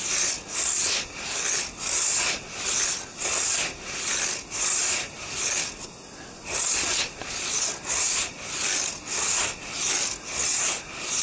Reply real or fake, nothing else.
real